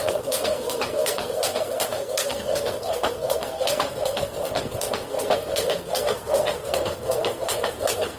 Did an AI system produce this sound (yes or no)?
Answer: yes